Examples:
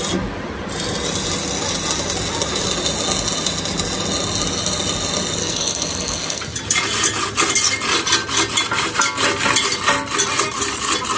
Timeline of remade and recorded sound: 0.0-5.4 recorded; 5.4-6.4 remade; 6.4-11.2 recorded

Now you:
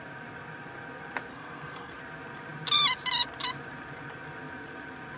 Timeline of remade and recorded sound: 0.0-1.3 recorded; 1.3-2.0 remade; 2.0-5.2 recorded

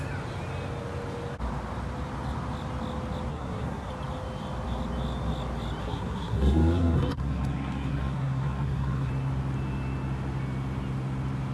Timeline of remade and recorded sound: 0.0-3.3 recorded; 3.3-3.9 remade; 3.9-5.8 recorded; 5.8-9.1 remade; 9.1-11.5 recorded